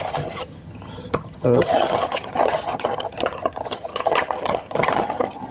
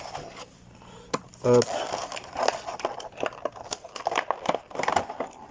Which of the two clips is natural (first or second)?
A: second